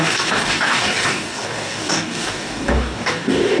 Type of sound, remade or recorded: remade